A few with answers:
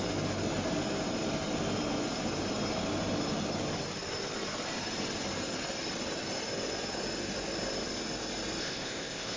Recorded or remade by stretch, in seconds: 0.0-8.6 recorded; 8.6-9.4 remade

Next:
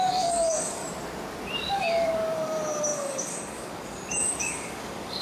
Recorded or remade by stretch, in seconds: 0.0-0.8 remade; 0.8-1.7 recorded; 1.7-5.2 remade

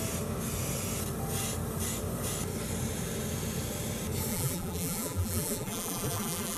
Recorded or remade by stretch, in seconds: 0.0-4.3 recorded; 4.3-6.6 remade

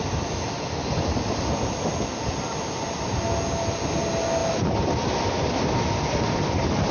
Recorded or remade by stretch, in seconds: 0.0-6.9 recorded

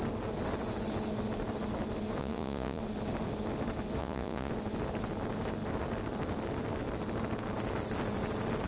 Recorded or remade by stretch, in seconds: 0.0-2.2 recorded; 2.2-2.8 remade; 2.8-4.0 recorded; 4.0-4.5 remade; 4.5-8.7 recorded

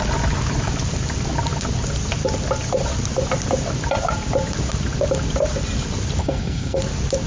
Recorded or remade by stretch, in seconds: 0.0-6.2 recorded; 6.2-6.8 remade; 6.8-7.3 recorded

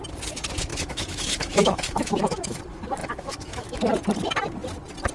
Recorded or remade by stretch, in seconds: 0.0-0.7 recorded; 0.7-2.6 remade; 2.6-3.0 recorded; 3.0-3.8 remade; 3.8-5.1 recorded